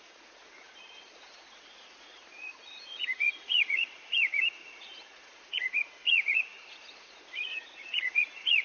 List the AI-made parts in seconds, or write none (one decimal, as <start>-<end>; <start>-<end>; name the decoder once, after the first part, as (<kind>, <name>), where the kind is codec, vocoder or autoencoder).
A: 0.0-8.6 (vocoder, Vocos)